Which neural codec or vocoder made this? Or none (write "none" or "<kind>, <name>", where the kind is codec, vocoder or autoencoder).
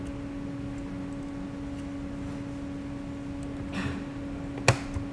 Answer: none